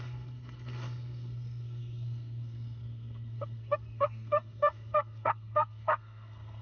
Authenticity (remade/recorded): remade